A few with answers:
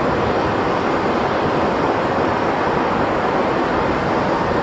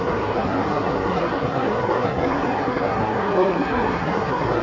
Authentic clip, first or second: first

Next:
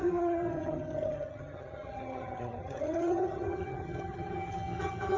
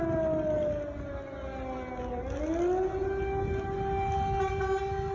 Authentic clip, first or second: second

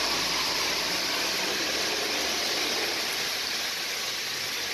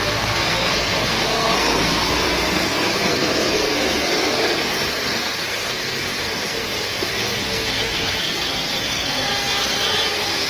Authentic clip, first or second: first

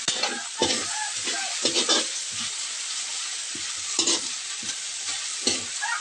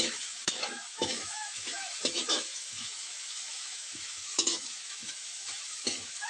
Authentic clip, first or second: first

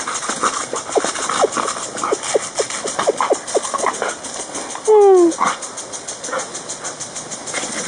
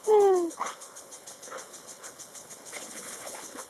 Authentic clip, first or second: first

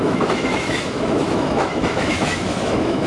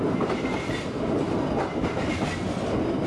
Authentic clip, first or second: second